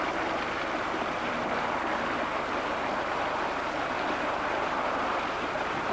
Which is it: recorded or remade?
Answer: recorded